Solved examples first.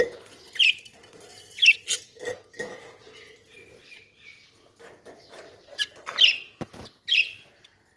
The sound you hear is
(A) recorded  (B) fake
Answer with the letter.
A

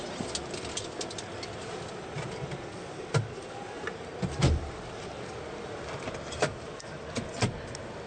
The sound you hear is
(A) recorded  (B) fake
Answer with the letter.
A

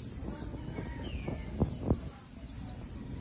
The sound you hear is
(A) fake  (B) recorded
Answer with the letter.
B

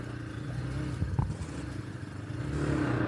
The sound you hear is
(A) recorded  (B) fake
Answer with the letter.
A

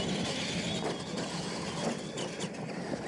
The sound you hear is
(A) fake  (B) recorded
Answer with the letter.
B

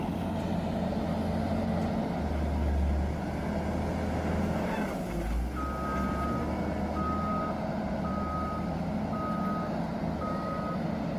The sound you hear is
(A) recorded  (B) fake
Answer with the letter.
A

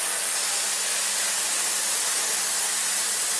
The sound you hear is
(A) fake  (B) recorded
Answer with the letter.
B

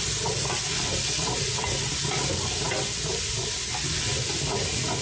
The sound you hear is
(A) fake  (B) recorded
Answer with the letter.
B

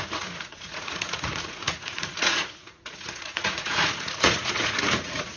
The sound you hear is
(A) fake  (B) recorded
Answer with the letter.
A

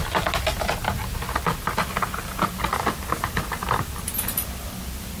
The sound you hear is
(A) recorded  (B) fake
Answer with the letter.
B